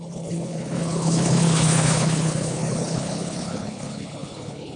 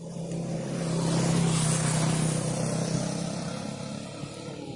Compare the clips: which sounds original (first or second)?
second